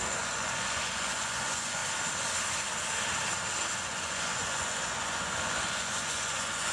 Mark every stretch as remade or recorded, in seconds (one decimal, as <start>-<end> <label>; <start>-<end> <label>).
0.0-1.8 remade; 1.8-3.7 recorded; 3.7-6.7 remade